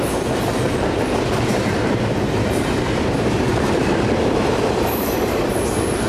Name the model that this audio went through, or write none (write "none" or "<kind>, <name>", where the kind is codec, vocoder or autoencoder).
vocoder, BigVGAN v2